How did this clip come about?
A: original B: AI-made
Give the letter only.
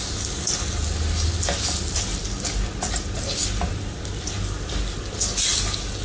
A